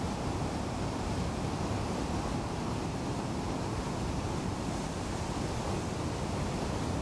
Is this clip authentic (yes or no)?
yes